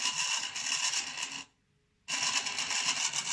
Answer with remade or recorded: recorded